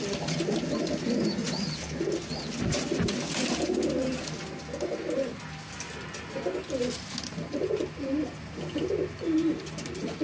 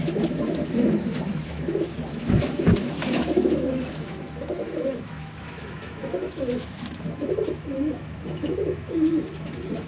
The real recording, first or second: first